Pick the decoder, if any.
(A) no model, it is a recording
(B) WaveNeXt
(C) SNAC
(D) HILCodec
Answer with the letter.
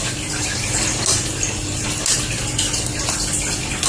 A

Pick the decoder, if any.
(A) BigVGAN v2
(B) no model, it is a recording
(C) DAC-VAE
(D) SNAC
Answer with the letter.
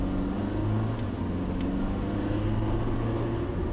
B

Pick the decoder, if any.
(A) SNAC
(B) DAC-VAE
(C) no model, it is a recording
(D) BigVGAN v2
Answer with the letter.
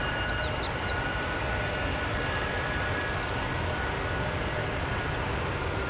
C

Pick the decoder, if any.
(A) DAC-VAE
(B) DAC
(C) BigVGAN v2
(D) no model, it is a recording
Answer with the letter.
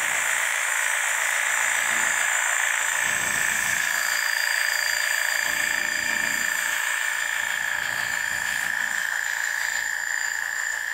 A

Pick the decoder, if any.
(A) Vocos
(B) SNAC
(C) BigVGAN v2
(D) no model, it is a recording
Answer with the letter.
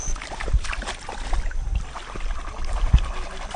D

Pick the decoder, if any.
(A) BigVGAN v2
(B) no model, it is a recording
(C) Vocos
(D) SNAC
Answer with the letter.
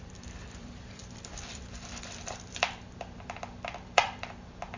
A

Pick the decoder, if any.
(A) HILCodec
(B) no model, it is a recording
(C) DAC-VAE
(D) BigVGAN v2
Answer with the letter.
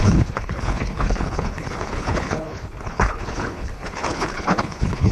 A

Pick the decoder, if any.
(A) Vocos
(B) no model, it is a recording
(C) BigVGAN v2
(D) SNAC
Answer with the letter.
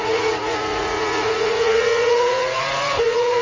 A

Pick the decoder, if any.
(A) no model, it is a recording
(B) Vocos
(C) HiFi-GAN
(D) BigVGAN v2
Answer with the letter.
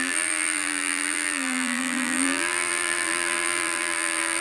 D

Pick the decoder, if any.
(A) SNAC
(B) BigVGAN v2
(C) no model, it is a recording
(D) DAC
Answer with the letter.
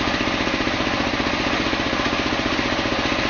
C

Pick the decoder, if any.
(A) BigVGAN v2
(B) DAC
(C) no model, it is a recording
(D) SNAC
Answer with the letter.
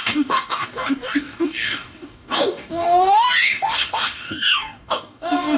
B